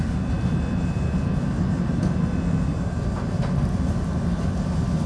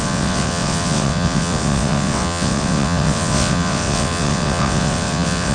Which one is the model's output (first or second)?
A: second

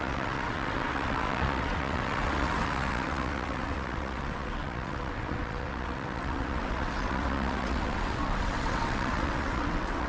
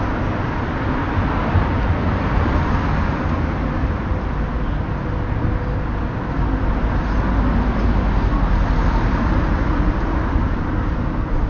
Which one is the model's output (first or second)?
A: first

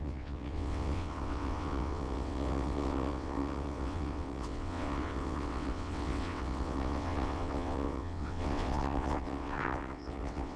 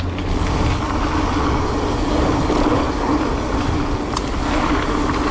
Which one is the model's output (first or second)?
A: first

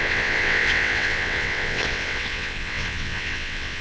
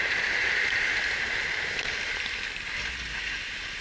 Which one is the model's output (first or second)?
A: first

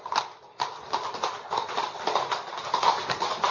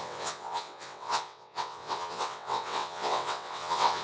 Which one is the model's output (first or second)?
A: second